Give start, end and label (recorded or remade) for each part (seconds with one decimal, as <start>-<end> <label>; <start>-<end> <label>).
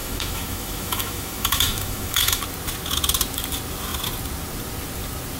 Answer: 0.0-2.4 remade; 2.4-5.4 recorded